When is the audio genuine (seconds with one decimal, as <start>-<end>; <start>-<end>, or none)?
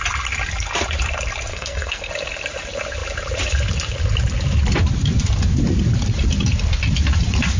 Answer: 0.0-1.5; 2.1-7.6